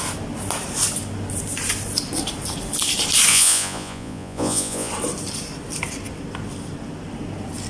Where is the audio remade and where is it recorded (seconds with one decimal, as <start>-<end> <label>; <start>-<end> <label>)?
0.0-3.3 recorded; 3.3-4.9 remade; 4.9-7.7 recorded